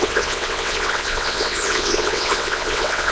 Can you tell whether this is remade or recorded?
remade